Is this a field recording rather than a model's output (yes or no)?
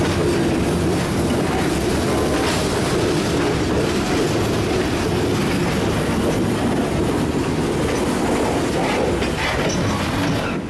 yes